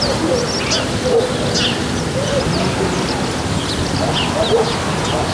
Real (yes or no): yes